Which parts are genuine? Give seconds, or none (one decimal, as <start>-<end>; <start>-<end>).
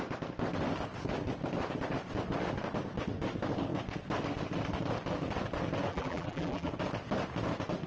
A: 0.0-5.9; 6.7-7.9